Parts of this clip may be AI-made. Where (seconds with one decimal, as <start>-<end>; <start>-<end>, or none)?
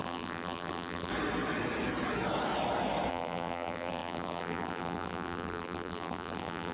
0.0-1.1; 3.1-6.7